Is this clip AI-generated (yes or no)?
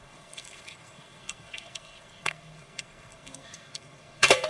yes